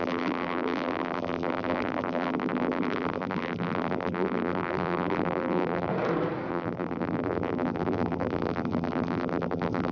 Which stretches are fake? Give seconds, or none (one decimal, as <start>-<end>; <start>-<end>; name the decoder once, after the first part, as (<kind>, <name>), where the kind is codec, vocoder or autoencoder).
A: 0.0-5.9 (vocoder, BigVGAN v2); 6.5-9.9